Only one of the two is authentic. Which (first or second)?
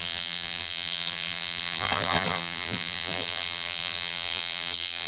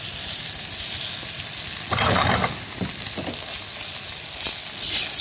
second